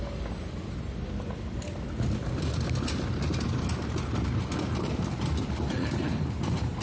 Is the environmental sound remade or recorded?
recorded